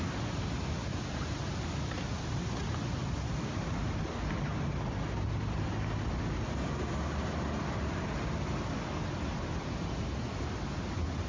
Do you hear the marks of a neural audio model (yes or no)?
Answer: no